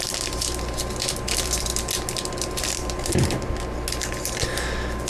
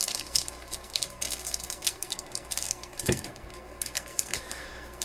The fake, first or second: second